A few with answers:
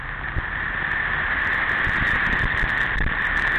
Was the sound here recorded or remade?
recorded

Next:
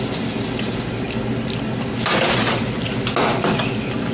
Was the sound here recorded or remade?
recorded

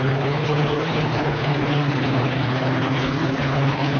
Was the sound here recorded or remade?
remade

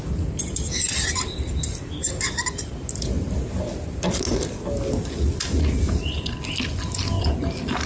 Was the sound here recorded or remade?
recorded